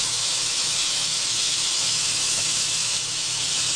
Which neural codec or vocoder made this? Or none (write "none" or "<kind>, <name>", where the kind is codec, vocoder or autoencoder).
autoencoder, DAC-VAE